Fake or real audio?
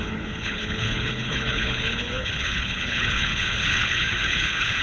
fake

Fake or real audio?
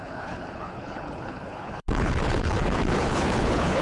fake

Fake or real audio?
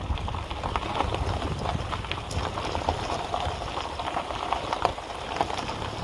real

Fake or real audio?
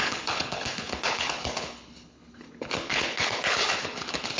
fake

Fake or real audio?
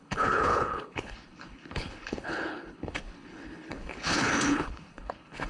fake